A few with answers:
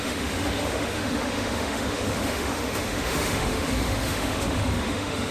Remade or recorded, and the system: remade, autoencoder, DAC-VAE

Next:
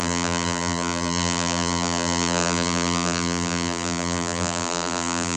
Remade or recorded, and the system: remade, vocoder, BigVGAN v2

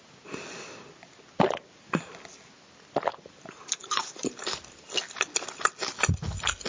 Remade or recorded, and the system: recorded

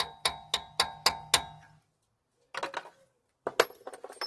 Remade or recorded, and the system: recorded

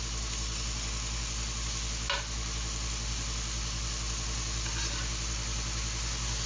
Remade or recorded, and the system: recorded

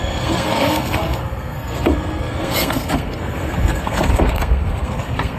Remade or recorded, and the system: remade, codec, SNAC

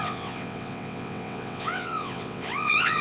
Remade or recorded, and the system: remade, vocoder, WaveNeXt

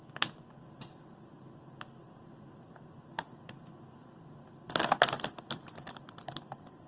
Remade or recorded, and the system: recorded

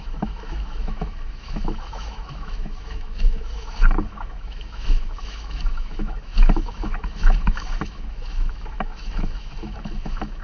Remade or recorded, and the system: remade, autoencoder, DAC-VAE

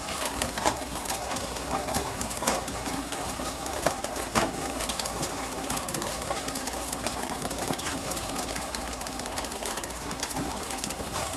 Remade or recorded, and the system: remade, codec, SNAC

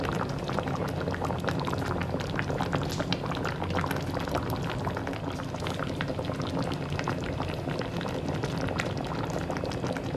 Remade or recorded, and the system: recorded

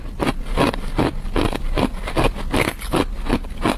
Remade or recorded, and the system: recorded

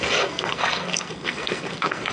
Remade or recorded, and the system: remade, codec, SNAC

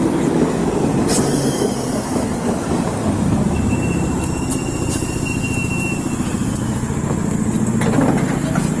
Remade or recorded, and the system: recorded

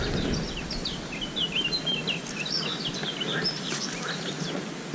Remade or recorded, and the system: recorded